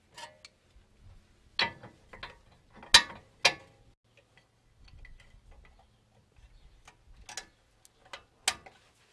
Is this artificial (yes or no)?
no